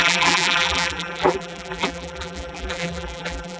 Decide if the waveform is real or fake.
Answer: fake